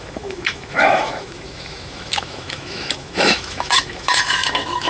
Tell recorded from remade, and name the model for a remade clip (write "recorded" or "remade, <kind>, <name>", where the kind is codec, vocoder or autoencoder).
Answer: remade, autoencoder, DAC-VAE